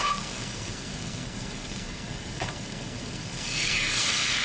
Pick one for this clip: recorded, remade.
remade